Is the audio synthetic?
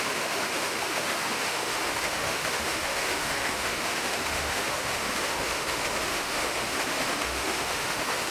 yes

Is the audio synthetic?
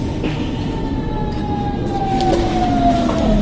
no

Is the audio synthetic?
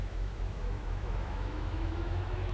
yes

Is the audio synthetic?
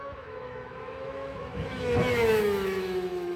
yes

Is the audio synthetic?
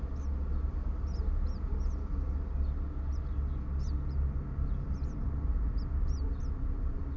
no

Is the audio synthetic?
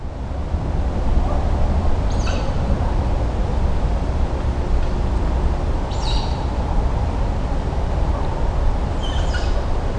no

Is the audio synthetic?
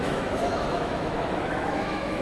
yes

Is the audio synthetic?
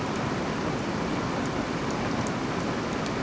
no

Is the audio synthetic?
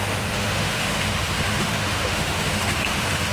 yes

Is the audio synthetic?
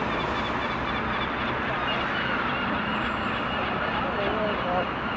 no